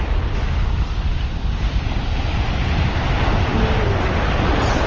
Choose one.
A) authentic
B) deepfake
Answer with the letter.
A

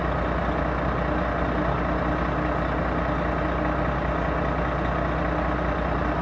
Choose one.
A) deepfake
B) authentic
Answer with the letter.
B